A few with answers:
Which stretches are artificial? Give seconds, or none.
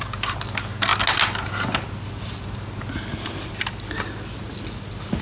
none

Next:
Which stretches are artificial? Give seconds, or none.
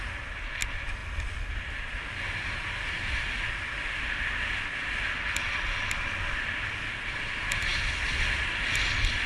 none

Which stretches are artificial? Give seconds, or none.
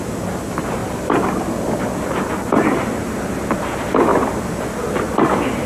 none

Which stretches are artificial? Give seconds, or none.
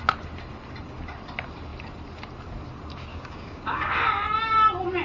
3.1-3.9